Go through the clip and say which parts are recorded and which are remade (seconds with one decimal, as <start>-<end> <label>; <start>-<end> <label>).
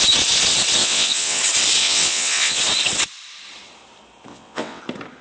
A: 0.0-0.8 recorded; 0.8-1.4 remade; 1.4-1.8 recorded; 1.8-2.6 remade; 2.6-4.3 recorded; 4.3-4.8 remade; 4.8-5.2 recorded